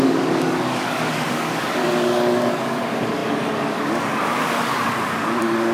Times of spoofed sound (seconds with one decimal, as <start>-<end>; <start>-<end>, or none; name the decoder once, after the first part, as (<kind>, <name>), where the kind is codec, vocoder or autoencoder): 0.0-5.7 (codec, DAC)